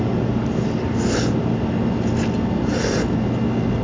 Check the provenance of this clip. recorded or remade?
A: recorded